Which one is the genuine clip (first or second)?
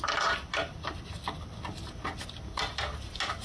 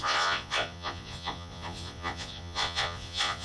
first